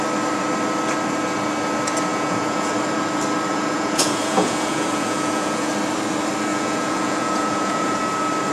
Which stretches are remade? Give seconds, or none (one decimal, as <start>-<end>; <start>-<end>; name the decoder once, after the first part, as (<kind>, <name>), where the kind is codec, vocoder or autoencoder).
2.1-2.7 (vocoder, Vocos); 3.5-5.7; 6.5-8.0